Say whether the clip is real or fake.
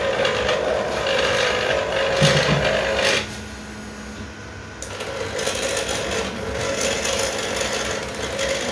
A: real